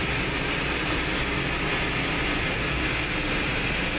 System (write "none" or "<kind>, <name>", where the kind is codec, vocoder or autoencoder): none